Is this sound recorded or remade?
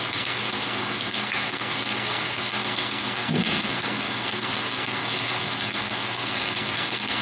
remade